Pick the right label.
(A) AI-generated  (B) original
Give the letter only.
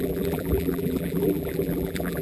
A